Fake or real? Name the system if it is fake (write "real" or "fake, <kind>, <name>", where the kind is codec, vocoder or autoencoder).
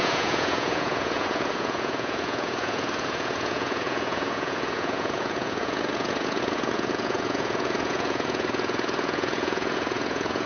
fake, vocoder, Vocos